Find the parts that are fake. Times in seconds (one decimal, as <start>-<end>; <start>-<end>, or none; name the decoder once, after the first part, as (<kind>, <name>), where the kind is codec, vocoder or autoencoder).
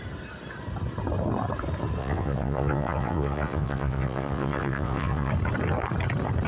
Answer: 2.0-5.3 (vocoder, WaveNeXt)